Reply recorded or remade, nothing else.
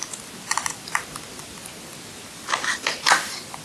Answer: recorded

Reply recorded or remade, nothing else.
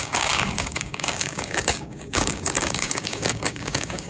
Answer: remade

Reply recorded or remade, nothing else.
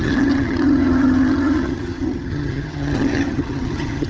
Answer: remade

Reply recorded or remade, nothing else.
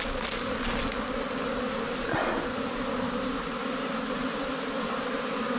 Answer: recorded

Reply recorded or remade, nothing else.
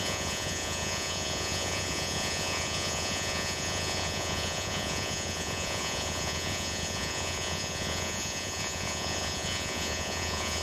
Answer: remade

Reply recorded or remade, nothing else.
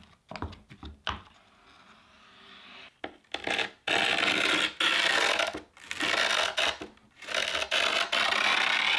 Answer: recorded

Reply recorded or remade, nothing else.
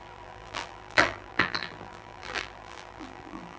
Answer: remade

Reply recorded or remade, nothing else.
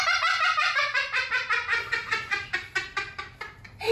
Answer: recorded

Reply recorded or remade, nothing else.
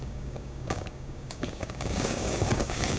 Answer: remade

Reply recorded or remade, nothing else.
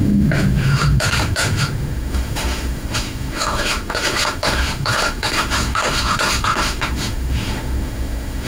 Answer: remade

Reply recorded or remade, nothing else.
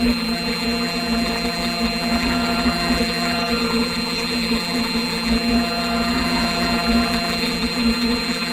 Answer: remade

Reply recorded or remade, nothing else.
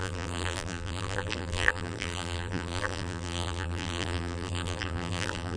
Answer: remade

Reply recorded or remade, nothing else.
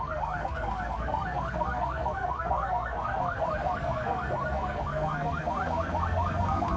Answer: remade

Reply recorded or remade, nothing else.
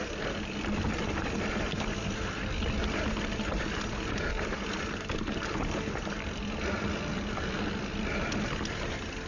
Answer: recorded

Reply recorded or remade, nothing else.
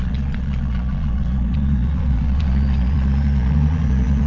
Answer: remade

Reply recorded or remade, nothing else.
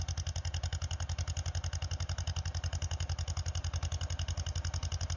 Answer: recorded